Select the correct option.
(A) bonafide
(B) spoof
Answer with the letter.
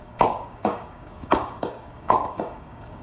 B